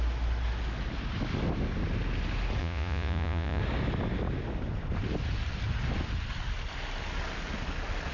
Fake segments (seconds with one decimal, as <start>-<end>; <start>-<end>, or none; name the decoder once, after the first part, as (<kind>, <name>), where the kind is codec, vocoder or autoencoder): 2.6-3.6 (vocoder, Vocos)